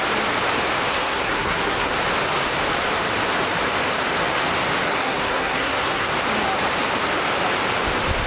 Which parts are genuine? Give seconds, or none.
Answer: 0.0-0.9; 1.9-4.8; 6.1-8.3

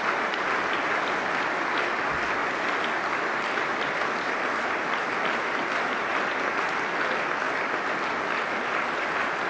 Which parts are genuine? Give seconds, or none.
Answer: 0.0-9.5

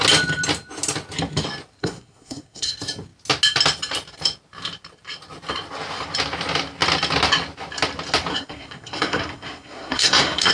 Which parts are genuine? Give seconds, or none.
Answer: 0.0-1.8; 2.7-8.3

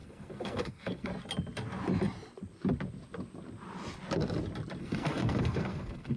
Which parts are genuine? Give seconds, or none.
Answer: 1.1-4.8

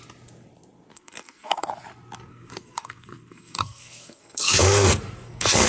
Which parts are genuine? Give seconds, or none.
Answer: 0.0-0.9; 1.7-2.3